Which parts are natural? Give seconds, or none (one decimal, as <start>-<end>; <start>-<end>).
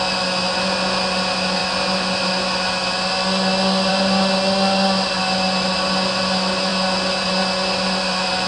0.0-8.5